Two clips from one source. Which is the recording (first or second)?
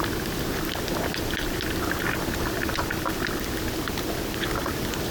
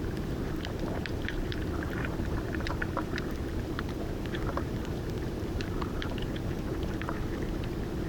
first